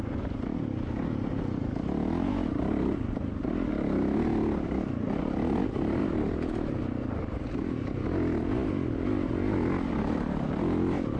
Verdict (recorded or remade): recorded